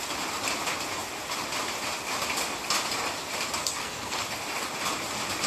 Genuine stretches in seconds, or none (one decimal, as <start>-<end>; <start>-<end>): 0.0-3.7; 4.2-5.5